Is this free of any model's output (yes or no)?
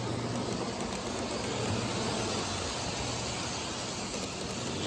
yes